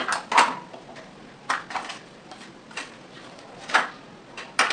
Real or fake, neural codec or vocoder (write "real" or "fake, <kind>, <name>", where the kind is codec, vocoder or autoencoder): real